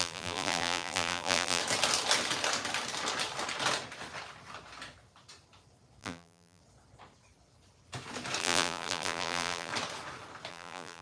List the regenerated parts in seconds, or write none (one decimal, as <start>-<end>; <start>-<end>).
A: 0.0-1.6; 6.0-6.6; 8.4-9.7; 10.5-11.0